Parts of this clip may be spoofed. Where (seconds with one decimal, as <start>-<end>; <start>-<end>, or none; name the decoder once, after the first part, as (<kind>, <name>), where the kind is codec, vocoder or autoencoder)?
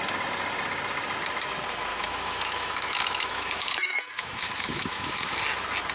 1.9-5.4 (autoencoder, DAC-VAE)